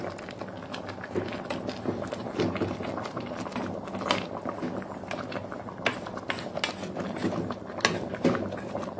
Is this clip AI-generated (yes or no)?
no